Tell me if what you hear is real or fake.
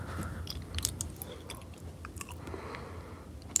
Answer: real